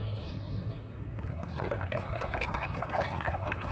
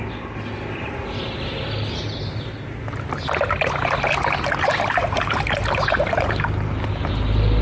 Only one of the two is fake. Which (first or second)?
first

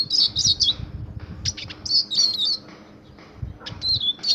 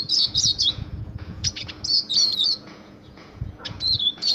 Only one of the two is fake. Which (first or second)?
second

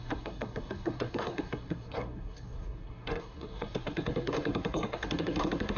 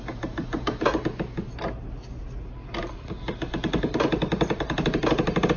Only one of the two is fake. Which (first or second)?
first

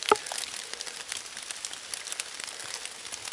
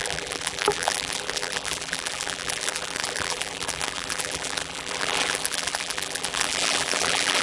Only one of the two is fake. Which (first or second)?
second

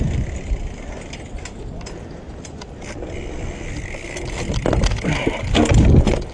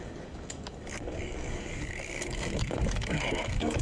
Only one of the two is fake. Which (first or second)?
second